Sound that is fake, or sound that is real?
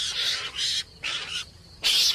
real